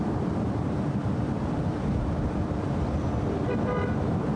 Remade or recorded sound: remade